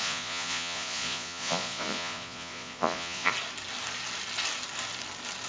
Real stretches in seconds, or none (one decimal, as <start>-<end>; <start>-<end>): 3.3-5.5